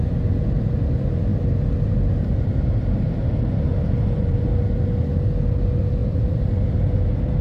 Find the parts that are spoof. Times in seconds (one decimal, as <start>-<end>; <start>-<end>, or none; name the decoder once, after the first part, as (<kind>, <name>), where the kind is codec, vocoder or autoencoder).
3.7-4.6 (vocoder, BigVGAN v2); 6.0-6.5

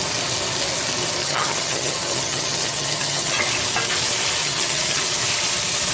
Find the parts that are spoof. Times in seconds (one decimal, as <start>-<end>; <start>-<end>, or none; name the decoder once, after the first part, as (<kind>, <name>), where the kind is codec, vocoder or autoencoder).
1.2-3.4 (vocoder, HiFi-GAN); 4.4-5.0

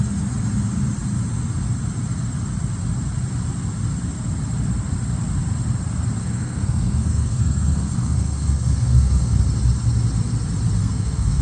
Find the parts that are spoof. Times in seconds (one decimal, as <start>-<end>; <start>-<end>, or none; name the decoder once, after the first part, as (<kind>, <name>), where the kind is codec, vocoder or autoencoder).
6.2-9.4 (codec, SNAC); 10.8-11.4